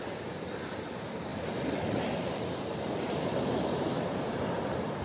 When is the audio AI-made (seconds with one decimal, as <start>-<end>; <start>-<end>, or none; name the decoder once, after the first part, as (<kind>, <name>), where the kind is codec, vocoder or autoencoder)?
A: 1.3-4.3 (vocoder, BigVGAN v2)